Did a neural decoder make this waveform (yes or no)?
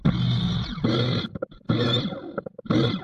no